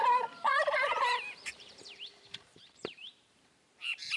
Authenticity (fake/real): fake